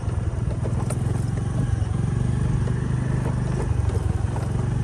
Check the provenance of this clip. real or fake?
real